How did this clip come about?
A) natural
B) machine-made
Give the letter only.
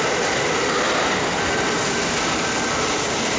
A